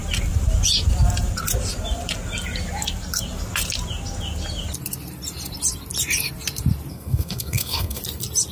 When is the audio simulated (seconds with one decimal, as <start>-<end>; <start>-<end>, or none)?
6.9-8.0